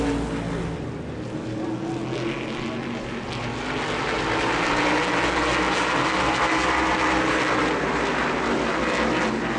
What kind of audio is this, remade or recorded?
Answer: recorded